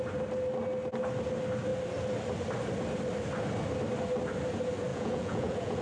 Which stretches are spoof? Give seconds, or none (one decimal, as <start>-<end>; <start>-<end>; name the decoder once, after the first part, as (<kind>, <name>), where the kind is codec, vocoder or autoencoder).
4.9-5.8 (vocoder, Vocos)